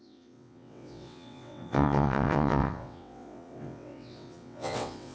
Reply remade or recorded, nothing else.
remade